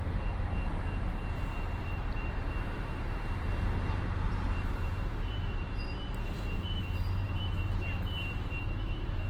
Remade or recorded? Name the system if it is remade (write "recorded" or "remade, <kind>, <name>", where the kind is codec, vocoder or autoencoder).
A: remade, vocoder, BigVGAN v2